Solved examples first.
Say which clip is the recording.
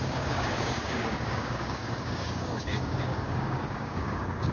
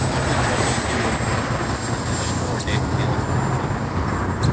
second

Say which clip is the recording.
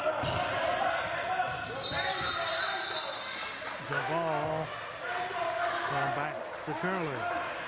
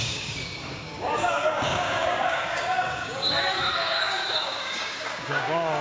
first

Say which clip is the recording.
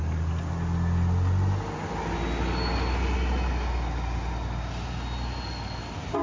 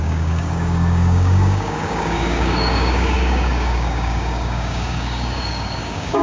first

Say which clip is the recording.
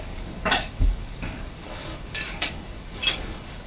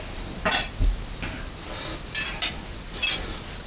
second